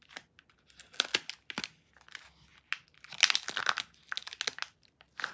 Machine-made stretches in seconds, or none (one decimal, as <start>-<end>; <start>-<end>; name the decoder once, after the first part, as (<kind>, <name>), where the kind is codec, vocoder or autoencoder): none